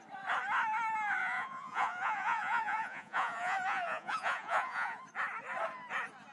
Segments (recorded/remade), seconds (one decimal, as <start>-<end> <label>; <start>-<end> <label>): 0.0-1.2 recorded; 1.2-5.0 remade; 5.0-6.3 recorded